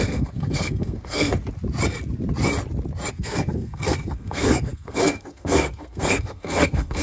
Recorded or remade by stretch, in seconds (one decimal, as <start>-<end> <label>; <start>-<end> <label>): 0.0-1.3 remade; 1.3-3.1 recorded; 3.1-7.0 remade